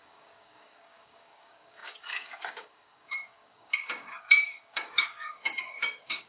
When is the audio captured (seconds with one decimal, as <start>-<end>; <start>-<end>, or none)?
none